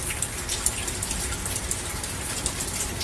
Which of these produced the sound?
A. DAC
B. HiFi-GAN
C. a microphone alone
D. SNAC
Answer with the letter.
C